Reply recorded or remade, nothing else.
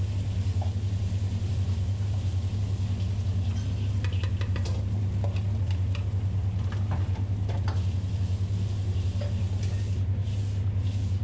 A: recorded